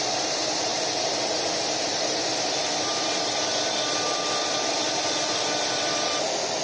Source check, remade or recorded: remade